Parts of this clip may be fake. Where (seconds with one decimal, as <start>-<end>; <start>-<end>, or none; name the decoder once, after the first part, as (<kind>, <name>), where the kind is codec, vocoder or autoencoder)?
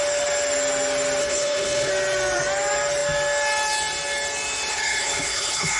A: 1.2-1.9 (codec, HILCodec); 4.7-5.8